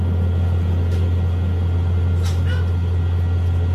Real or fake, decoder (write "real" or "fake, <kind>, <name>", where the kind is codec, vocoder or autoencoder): real